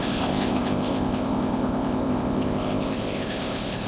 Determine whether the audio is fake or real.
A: fake